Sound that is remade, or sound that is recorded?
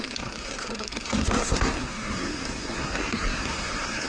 remade